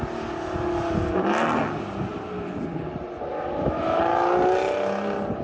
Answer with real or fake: real